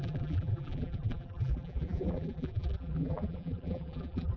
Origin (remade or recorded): remade